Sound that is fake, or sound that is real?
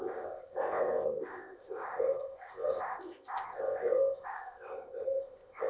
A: fake